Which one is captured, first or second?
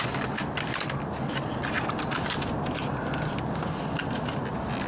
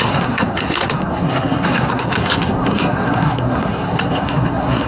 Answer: first